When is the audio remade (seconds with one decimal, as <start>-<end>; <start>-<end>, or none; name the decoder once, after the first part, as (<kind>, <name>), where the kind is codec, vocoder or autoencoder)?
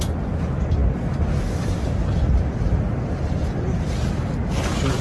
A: none